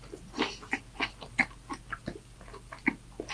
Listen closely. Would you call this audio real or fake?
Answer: real